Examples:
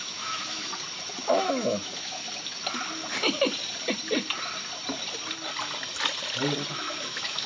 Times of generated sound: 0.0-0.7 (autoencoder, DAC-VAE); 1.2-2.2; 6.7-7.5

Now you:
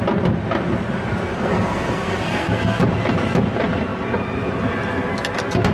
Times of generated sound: 1.3-2.8 (codec, SNAC)